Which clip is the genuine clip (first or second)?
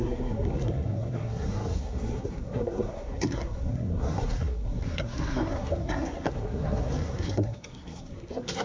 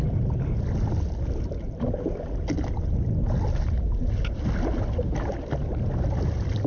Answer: second